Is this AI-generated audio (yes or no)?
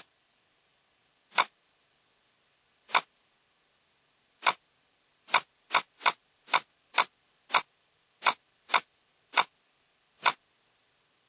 no